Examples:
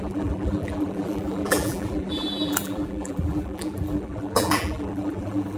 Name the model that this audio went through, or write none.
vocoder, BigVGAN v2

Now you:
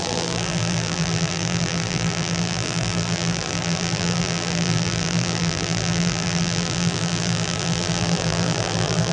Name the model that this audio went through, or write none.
vocoder, BigVGAN v2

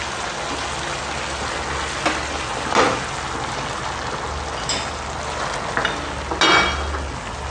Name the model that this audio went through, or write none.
none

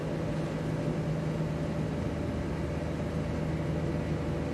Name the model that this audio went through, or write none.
none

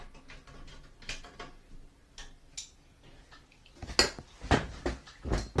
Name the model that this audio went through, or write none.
none